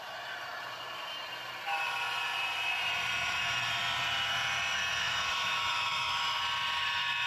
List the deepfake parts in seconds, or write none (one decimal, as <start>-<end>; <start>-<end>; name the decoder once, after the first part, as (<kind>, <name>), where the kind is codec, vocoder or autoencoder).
5.0-6.4 (autoencoder, DAC-VAE)